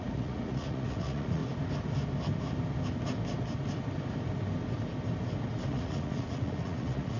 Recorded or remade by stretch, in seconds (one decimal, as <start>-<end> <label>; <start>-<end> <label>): 0.0-1.4 remade; 1.4-5.7 recorded; 5.7-7.2 remade